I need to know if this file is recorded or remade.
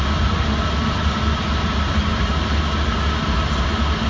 recorded